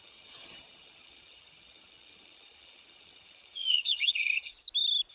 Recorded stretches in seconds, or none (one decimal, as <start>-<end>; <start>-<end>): 4.5-5.1